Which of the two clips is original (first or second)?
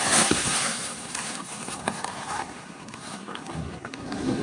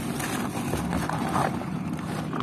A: second